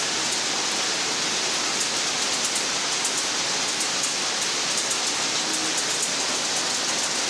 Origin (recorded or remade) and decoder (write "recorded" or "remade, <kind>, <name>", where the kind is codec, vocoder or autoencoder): recorded